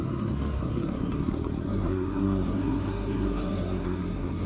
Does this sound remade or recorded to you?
remade